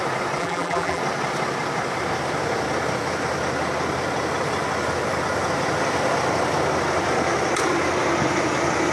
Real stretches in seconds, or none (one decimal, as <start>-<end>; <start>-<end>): 0.0-0.4; 1.0-8.9